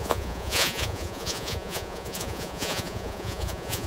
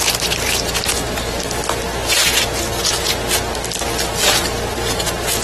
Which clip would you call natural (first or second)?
second